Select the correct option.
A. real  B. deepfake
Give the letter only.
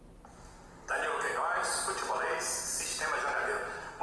A